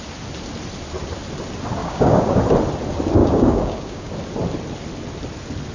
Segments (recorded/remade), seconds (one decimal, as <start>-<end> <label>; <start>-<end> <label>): 0.0-1.8 recorded; 1.8-2.4 remade; 2.4-3.2 recorded; 3.2-4.1 remade; 4.1-5.7 recorded